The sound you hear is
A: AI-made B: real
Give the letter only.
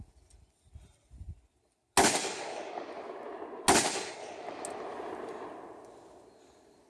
B